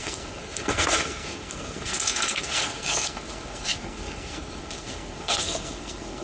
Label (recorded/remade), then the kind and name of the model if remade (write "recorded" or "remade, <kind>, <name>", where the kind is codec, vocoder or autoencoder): remade, codec, SNAC